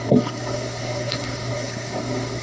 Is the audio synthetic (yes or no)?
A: yes